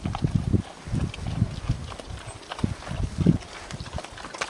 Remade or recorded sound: recorded